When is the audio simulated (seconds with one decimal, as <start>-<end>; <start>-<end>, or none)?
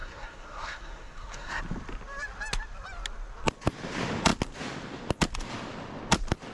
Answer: 0.0-1.6